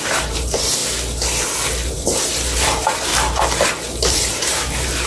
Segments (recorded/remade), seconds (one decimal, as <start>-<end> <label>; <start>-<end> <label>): 0.0-0.8 remade; 0.8-1.9 recorded; 1.9-3.1 remade; 3.1-4.1 recorded; 4.1-5.1 remade